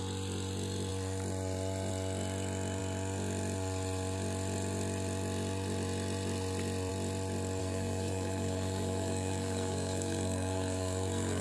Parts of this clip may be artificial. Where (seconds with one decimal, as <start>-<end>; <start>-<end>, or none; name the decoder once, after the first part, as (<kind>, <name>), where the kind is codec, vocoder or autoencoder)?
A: 7.6-11.4 (codec, SNAC)

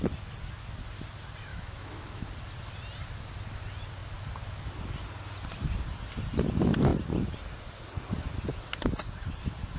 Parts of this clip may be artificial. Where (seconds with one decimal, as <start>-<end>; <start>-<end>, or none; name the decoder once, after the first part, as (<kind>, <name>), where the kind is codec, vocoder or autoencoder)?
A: 1.5-2.3 (autoencoder, DAC-VAE)

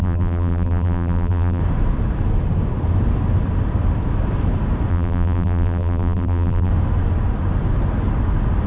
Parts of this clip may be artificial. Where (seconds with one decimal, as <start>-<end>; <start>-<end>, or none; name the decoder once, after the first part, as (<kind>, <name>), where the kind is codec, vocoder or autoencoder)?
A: 0.0-1.6 (vocoder, BigVGAN v2); 4.9-6.7